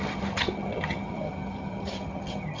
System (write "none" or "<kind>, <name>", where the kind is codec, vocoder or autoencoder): vocoder, HiFi-GAN